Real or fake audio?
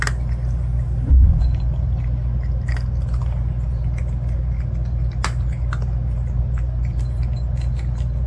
real